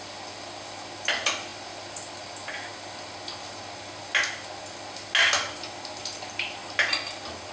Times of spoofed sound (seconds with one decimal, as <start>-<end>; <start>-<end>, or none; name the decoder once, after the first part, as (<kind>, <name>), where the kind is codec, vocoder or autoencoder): none